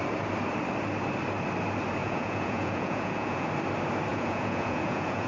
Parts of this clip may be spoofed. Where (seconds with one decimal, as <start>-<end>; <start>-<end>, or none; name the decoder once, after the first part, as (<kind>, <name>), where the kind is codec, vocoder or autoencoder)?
2.0-3.5 (vocoder, Vocos); 4.1-5.3